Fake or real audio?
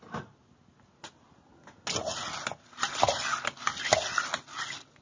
real